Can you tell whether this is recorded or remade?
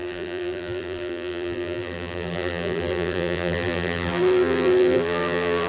remade